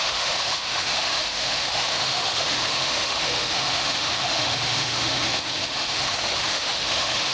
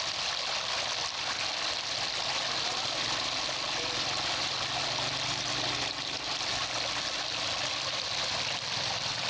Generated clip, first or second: first